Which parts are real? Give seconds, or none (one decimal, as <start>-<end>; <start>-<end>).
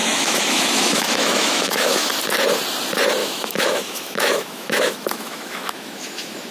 2.1-3.2